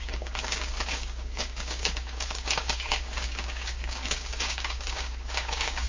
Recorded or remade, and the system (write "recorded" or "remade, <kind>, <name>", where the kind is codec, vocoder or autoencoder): remade, codec, DAC